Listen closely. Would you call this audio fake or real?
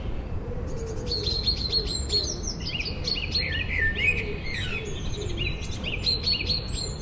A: real